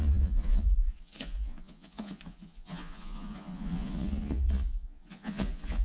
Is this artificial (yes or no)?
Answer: yes